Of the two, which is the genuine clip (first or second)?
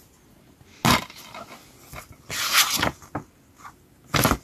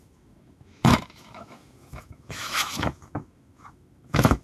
first